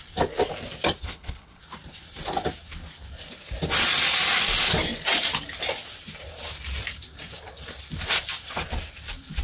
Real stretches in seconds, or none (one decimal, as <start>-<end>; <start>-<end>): 0.0-1.0; 1.6-9.4